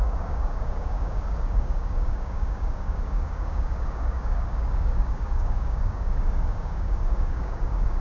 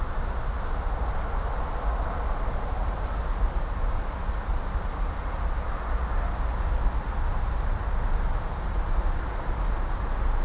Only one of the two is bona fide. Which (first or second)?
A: second